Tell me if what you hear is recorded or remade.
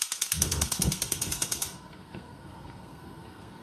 remade